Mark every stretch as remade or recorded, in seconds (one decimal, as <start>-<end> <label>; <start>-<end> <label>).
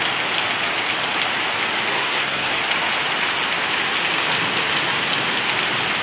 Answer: 0.0-1.9 recorded; 1.9-2.6 remade; 2.6-6.0 recorded